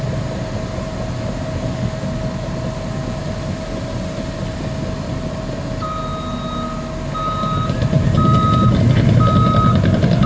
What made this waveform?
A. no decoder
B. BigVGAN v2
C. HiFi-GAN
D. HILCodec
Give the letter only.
A